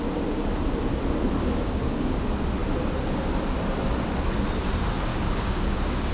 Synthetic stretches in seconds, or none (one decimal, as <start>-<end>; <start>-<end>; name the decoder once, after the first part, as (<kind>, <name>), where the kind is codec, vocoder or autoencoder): 1.4-2.2 (codec, DAC); 5.1-6.1